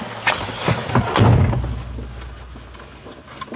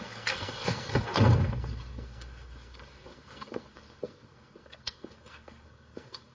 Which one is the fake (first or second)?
second